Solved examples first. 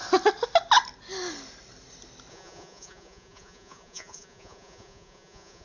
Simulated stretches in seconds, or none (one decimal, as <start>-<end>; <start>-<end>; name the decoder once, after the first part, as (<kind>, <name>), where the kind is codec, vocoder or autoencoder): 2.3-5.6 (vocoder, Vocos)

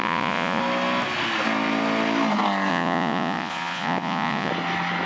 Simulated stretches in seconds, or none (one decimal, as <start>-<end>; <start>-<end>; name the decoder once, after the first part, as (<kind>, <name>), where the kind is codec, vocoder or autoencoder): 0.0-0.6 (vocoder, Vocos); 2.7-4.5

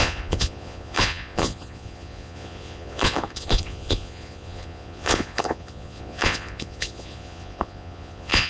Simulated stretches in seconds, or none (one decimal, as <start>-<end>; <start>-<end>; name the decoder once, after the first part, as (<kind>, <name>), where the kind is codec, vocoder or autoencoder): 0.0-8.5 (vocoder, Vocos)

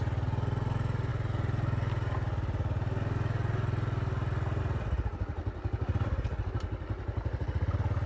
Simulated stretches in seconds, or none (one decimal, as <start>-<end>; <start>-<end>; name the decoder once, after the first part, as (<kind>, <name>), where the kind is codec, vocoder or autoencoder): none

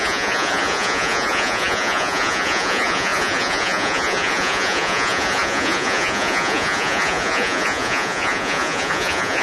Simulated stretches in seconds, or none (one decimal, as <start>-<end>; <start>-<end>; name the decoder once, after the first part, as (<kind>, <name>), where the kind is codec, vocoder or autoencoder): 0.0-9.4 (vocoder, Vocos)

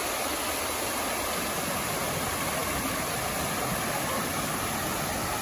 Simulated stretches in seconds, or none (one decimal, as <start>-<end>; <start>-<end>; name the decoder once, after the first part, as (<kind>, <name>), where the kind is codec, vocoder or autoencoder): none